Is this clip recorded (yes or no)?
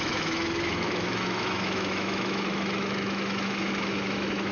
no